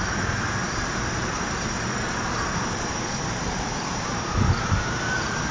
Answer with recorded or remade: remade